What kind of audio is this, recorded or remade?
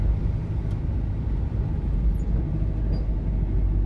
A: recorded